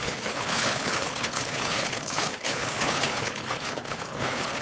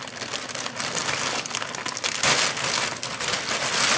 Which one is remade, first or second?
first